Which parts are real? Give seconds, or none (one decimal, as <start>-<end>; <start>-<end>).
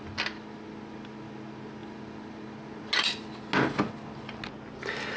0.0-5.2